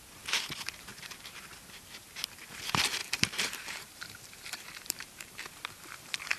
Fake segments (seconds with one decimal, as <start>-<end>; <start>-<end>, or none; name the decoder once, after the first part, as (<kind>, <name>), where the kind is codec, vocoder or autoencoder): 0.9-1.6 (vocoder, BigVGAN v2); 3.0-5.4